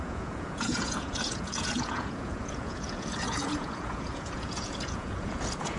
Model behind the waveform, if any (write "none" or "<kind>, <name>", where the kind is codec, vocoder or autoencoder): vocoder, Vocos